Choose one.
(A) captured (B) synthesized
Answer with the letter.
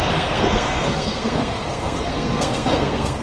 B